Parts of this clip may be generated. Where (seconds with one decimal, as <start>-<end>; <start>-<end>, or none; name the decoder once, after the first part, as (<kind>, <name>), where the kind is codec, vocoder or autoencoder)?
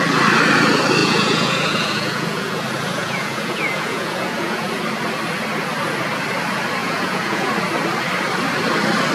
1.0-2.6 (vocoder, Vocos); 3.0-4.7; 6.8-7.5